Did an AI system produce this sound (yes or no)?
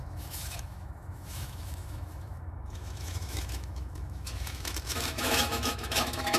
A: yes